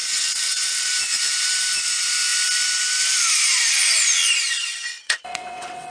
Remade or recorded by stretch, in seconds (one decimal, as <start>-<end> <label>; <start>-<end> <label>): 0.0-0.9 remade; 0.9-4.9 recorded; 4.9-5.9 remade